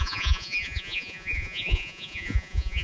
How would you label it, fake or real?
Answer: fake